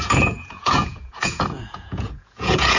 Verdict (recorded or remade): remade